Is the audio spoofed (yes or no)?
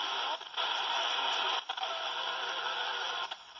no